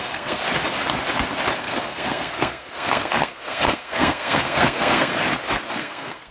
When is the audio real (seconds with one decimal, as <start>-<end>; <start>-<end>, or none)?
0.4-1.6; 5.1-5.7